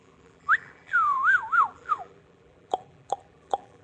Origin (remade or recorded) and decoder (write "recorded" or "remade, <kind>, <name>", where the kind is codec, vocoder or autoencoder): remade, vocoder, BigVGAN v2